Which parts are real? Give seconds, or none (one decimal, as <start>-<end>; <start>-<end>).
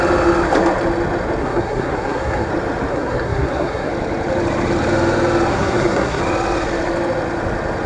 0.0-1.4; 2.5-2.9; 3.9-5.5; 6.2-7.9